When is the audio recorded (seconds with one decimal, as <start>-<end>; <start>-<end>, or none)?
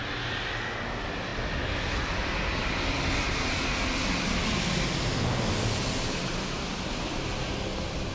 0.0-8.1